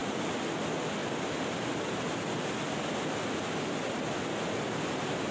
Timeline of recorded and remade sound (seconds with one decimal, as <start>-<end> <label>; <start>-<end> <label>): 0.0-5.3 recorded